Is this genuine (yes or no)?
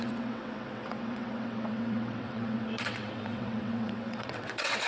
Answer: no